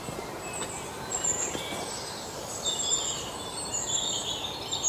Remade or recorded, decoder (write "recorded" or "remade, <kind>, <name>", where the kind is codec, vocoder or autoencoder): recorded